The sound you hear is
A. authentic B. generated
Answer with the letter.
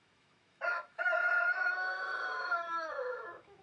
B